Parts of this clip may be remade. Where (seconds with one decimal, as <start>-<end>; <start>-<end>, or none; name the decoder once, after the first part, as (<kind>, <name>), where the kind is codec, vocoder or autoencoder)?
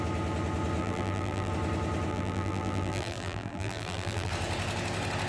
0.8-1.5 (vocoder, BigVGAN v2); 2.1-4.3